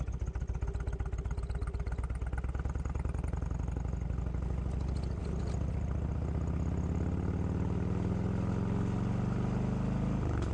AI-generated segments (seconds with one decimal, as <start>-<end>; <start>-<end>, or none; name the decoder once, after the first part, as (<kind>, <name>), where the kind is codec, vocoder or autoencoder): none